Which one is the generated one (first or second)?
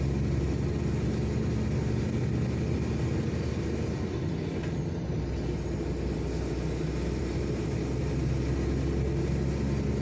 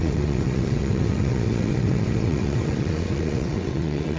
second